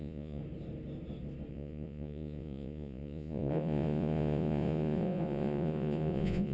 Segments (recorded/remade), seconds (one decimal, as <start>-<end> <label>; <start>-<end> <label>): 0.0-0.4 remade; 0.4-1.5 recorded; 1.5-6.5 remade